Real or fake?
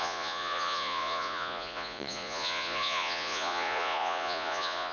fake